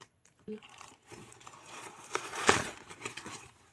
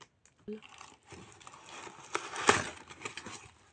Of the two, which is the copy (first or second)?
first